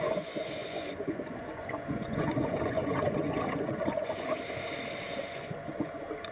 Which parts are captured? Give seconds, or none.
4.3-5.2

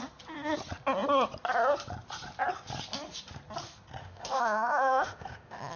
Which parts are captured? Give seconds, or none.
0.0-4.0

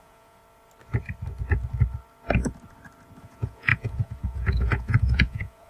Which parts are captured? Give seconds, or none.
0.4-3.2

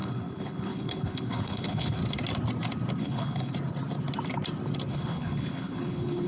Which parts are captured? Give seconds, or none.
2.0-3.0; 3.5-4.9

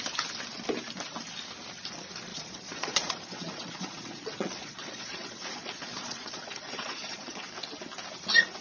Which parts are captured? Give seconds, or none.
0.0-2.3; 7.5-8.6

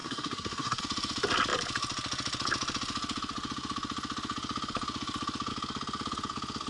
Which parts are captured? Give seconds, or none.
0.8-6.7